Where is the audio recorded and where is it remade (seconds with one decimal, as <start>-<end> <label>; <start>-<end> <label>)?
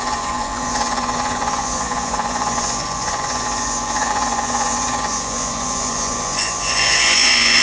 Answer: 0.0-7.6 remade